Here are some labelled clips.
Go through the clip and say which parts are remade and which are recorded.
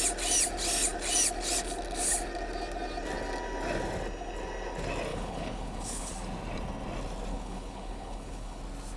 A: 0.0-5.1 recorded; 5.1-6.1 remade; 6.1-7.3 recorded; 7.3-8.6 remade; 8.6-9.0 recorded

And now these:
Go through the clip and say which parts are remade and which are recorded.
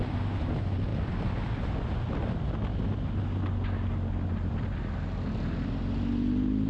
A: 0.0-6.7 recorded